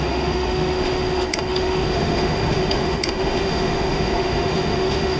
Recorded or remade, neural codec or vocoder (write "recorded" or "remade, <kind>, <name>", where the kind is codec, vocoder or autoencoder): remade, autoencoder, DAC-VAE